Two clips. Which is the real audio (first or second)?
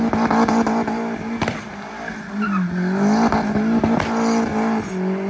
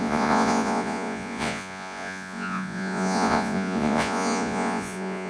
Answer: first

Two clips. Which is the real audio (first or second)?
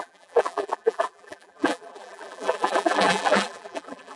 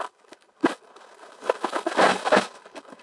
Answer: second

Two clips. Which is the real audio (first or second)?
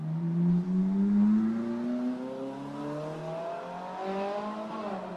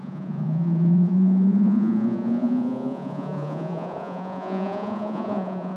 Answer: first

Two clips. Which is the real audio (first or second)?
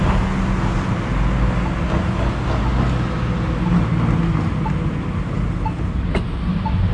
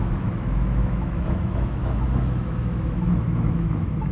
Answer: first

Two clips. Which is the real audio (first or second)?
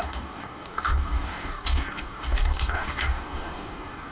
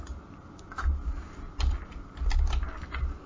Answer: second